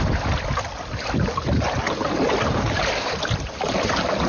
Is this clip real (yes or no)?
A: yes